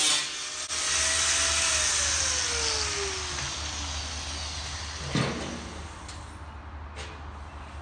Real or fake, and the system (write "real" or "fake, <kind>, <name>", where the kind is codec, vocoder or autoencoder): real